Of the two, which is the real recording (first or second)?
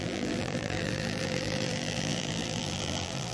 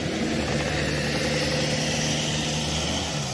second